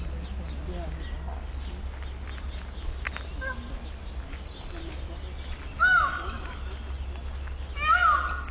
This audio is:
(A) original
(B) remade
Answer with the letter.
A